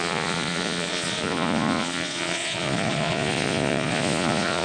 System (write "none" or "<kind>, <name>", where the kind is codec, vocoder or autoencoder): vocoder, Vocos